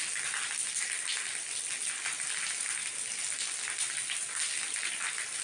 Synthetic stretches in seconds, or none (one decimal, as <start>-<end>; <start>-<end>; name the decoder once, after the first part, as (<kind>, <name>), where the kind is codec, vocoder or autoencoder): none